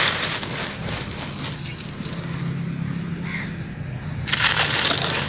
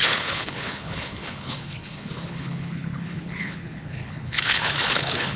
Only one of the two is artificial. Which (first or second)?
second